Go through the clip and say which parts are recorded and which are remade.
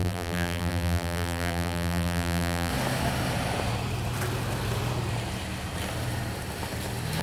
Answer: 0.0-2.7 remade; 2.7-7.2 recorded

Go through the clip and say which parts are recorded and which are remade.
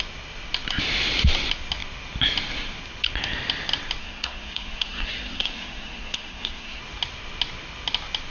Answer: 0.0-4.0 recorded; 4.0-6.8 remade; 6.8-8.3 recorded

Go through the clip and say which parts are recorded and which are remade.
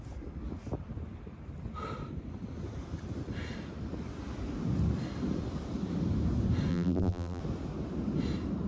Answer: 0.0-6.7 recorded; 6.7-7.4 remade; 7.4-8.7 recorded